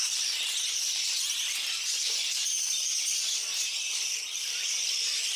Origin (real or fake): fake